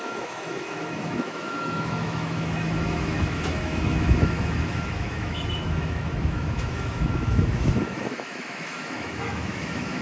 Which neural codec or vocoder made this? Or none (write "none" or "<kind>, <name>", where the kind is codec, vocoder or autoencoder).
autoencoder, DAC-VAE